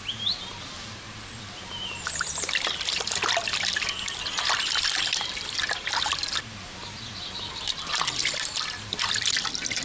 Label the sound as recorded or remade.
remade